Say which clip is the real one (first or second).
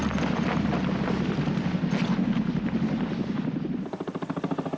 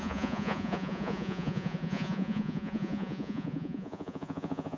first